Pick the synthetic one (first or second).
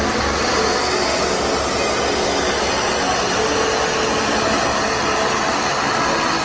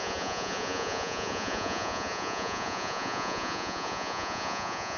second